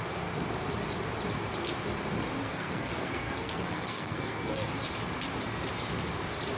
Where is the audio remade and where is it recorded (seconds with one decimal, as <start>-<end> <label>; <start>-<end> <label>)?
0.0-2.4 recorded; 2.4-4.7 remade; 4.7-6.6 recorded

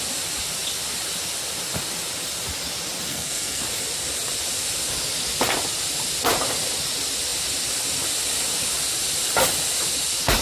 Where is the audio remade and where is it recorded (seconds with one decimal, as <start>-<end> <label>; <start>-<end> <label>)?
0.0-3.1 recorded; 3.1-3.6 remade; 3.6-10.4 recorded